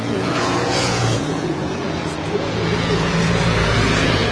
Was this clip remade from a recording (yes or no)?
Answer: yes